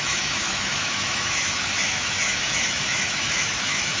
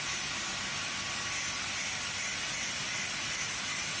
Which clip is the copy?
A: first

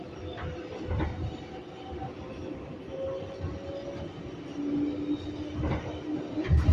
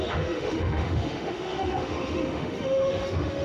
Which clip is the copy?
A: second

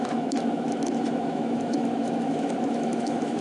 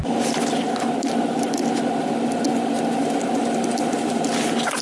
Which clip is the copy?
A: first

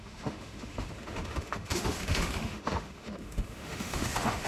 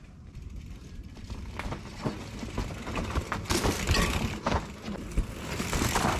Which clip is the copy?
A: first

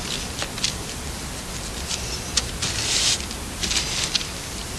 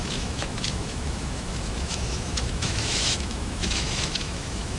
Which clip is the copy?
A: second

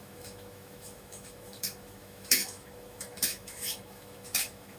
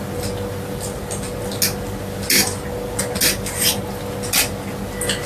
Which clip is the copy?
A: first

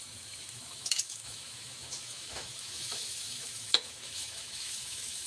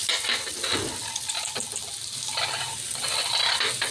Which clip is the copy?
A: first